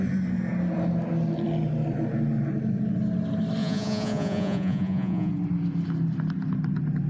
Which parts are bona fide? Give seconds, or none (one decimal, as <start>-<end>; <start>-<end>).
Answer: 0.0-3.6; 5.3-7.1